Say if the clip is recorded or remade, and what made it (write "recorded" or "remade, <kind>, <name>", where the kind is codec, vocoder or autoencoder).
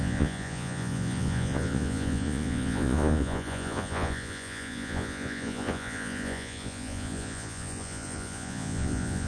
remade, vocoder, Vocos